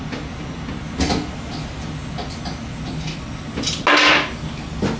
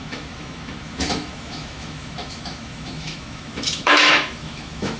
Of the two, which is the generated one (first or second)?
second